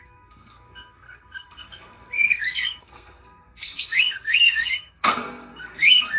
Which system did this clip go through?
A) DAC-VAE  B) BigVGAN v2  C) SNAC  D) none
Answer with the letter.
C